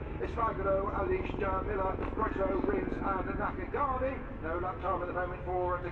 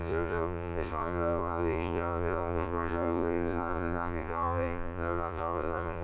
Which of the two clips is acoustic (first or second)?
first